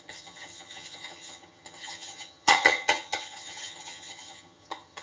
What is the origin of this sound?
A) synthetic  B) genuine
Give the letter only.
A